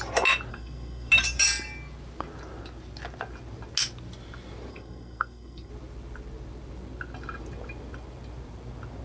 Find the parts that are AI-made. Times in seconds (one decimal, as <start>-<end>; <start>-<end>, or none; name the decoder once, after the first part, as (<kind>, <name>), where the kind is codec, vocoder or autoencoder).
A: 0.5-1.1 (codec, SNAC); 4.7-5.7